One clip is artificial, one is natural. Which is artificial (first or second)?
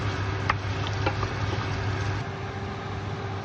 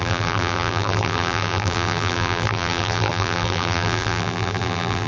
second